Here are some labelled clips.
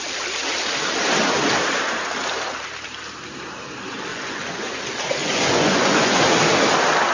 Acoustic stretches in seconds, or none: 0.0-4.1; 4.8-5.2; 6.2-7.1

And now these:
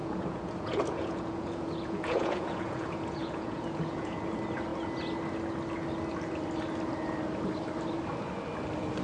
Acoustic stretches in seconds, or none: 4.2-9.0

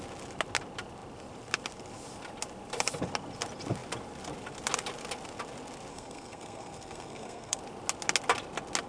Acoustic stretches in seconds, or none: 0.0-5.9; 7.6-8.9

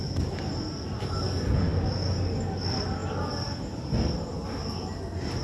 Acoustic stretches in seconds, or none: 0.0-5.4

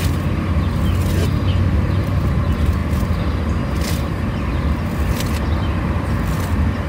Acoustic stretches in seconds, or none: 0.0-6.9

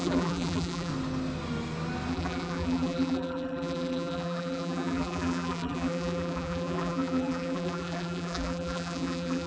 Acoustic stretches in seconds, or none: 0.9-2.1

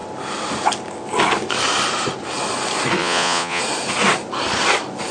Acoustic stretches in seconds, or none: 0.0-3.0; 3.6-5.1

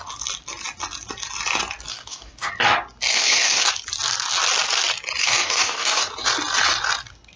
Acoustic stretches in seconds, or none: 0.0-1.9; 2.5-3.1; 3.7-5.2; 6.1-7.4